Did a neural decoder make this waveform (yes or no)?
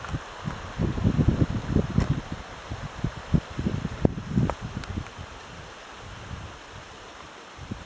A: no